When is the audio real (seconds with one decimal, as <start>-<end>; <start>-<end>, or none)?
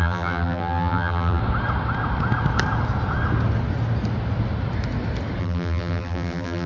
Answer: 1.4-5.4